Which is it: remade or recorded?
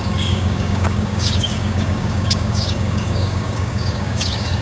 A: remade